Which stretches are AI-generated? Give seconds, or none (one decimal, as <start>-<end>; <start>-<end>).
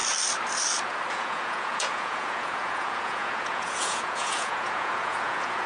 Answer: 1.1-5.7